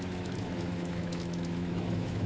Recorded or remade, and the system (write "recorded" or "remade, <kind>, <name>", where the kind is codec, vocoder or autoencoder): remade, autoencoder, DAC-VAE